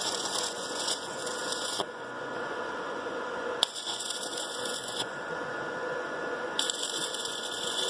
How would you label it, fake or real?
fake